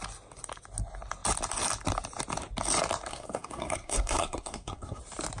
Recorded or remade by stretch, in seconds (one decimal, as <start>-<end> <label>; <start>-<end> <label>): 0.0-3.1 recorded; 3.1-5.0 remade; 5.0-5.4 recorded